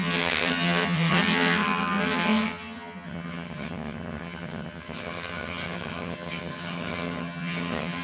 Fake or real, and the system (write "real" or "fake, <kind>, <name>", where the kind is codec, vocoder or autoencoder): fake, vocoder, HiFi-GAN